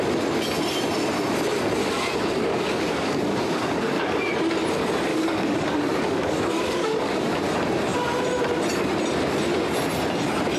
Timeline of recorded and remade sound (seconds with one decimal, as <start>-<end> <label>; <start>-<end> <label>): 0.0-1.8 recorded; 1.8-4.3 remade; 4.3-5.1 recorded; 5.1-7.4 remade; 7.4-10.6 recorded